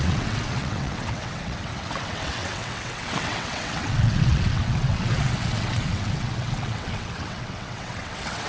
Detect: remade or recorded remade